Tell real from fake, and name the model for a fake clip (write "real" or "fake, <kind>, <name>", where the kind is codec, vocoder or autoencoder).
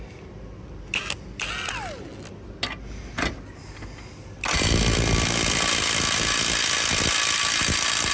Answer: real